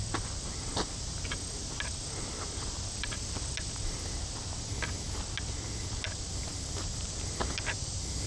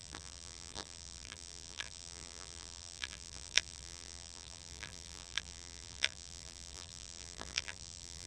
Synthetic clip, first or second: second